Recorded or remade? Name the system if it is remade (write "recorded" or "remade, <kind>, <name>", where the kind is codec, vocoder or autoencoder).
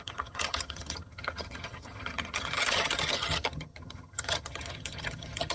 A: remade, vocoder, HiFi-GAN